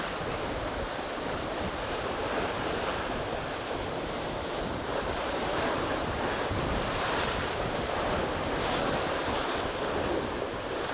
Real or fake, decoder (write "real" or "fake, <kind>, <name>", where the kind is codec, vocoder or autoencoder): fake, vocoder, BigVGAN v2